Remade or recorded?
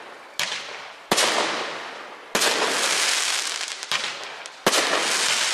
recorded